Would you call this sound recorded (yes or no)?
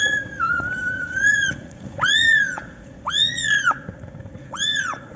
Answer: no